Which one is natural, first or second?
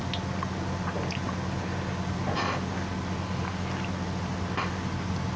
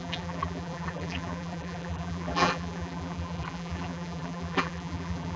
first